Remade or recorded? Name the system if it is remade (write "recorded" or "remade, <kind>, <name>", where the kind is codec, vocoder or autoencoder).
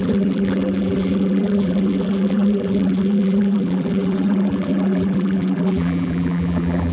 remade, vocoder, BigVGAN v2